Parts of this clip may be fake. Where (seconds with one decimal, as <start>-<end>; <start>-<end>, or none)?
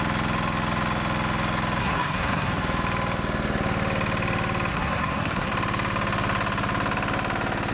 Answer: 1.8-2.6; 4.7-5.5